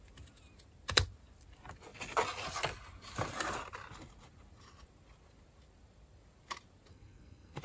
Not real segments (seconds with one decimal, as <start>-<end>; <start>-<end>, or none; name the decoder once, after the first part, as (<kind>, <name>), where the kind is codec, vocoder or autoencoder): 6.9-7.6 (codec, SNAC)